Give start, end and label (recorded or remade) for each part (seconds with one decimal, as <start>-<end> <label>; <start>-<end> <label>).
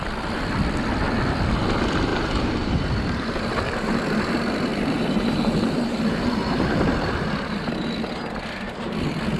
0.0-2.1 recorded; 2.1-4.0 remade; 4.0-4.7 recorded; 4.7-7.7 remade; 7.7-9.4 recorded